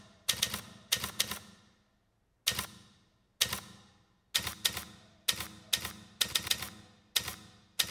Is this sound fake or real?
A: real